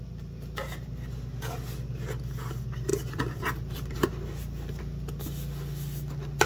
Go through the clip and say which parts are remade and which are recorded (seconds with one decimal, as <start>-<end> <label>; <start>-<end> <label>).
0.0-2.9 recorded; 2.9-4.8 remade; 4.8-6.5 recorded